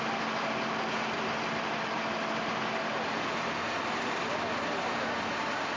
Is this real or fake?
real